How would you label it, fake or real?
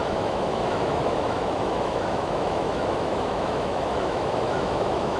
fake